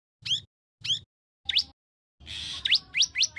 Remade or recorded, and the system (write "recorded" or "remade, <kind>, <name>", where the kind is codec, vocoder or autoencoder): recorded